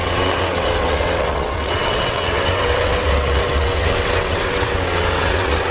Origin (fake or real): fake